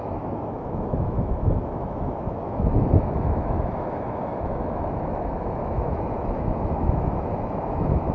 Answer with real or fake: fake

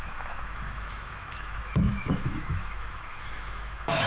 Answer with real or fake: fake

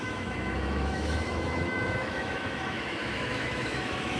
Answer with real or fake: fake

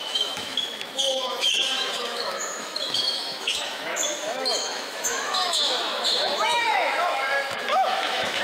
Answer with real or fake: fake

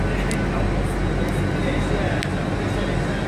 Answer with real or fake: real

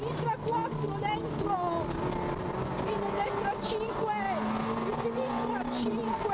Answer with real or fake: real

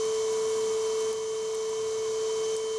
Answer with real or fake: real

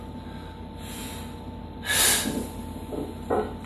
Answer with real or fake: real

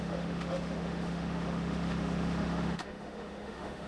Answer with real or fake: fake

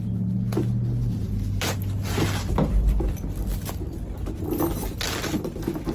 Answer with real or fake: real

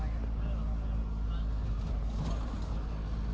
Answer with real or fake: real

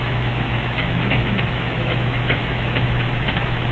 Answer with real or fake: fake